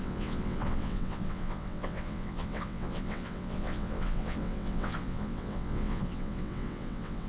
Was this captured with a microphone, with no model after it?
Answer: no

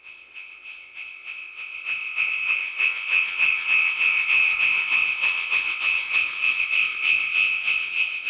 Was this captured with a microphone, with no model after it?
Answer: no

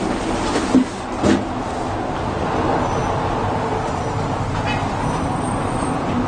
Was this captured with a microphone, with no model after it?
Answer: yes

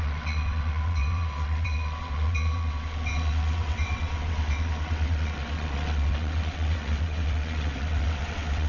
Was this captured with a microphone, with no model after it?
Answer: no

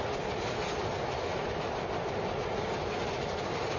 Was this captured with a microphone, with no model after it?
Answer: yes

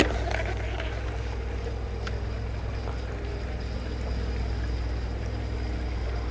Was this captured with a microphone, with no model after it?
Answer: yes